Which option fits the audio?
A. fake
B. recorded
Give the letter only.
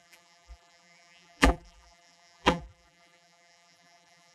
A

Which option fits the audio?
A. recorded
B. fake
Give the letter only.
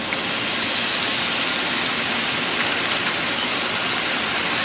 A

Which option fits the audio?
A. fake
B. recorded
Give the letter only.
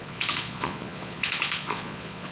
A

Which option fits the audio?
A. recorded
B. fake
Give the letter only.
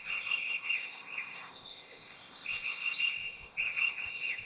B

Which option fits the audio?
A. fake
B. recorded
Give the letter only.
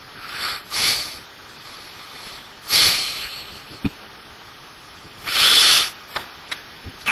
B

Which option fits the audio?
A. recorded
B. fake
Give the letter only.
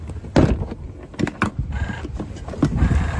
A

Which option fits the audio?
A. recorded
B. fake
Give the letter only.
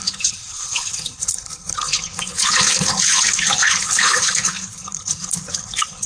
B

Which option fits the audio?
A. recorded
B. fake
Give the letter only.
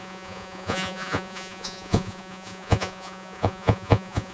B